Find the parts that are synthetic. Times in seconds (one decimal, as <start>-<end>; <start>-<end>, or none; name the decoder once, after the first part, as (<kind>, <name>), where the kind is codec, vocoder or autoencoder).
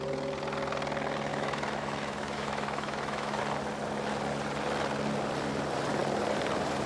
1.3-3.4 (autoencoder, DAC-VAE)